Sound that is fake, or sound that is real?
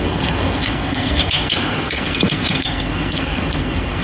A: fake